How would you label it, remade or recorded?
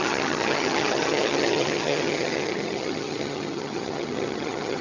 remade